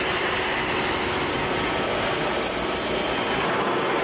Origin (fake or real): real